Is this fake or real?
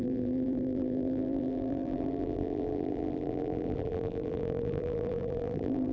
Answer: fake